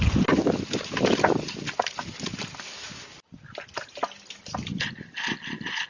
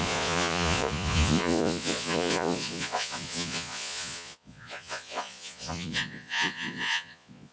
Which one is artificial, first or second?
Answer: second